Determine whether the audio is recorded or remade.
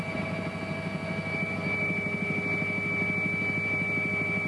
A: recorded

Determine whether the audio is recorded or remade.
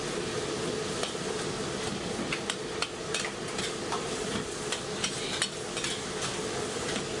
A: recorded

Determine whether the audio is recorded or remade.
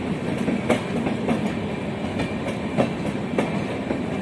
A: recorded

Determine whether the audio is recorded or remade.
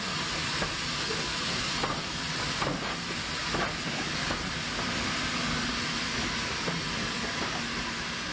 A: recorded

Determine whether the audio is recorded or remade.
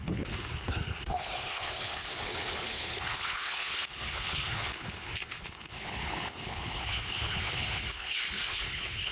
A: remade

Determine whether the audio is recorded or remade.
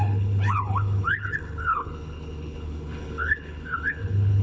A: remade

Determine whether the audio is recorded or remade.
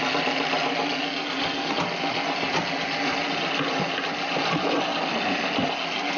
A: recorded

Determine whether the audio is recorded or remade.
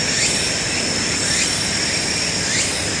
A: recorded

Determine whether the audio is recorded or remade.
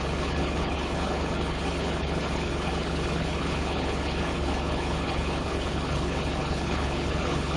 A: remade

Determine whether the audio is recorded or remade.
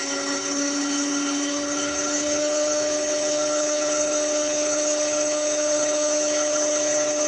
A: remade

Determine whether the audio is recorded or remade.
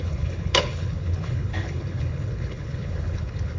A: remade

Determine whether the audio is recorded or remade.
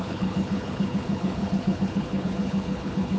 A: remade